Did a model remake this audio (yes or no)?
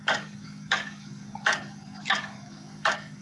yes